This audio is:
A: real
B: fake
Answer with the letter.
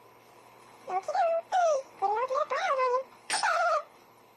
B